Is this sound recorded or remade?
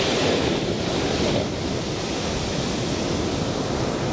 recorded